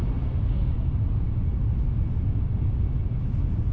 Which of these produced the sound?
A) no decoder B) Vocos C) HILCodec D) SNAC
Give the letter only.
A